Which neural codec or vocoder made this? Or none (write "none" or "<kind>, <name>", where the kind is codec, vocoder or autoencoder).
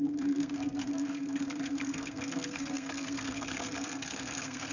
codec, SNAC